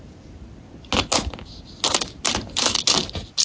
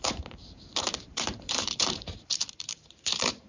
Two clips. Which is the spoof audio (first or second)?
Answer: second